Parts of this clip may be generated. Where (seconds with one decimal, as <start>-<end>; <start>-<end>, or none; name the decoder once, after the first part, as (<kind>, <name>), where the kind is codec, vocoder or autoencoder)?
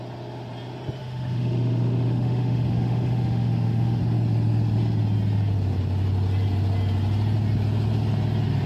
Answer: 1.0-4.0 (autoencoder, DAC-VAE)